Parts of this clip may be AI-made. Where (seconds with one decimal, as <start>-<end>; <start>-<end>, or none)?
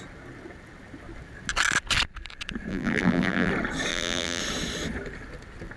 2.7-3.5; 3.9-4.4